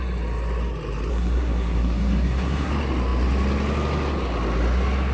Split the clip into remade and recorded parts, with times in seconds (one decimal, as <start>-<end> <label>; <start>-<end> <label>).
0.0-1.1 recorded; 1.1-2.7 remade; 2.7-5.1 recorded

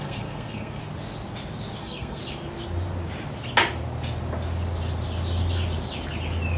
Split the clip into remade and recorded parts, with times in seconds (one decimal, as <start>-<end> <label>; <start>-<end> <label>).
0.0-0.8 remade; 0.8-1.8 recorded; 1.8-2.2 remade; 2.2-6.6 recorded

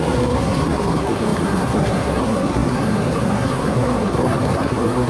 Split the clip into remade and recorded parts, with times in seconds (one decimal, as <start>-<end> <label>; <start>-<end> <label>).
0.0-5.1 remade